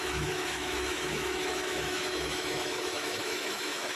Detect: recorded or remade remade